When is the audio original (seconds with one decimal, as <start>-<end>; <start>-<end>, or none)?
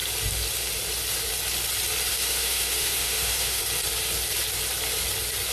0.0-2.1; 3.6-5.5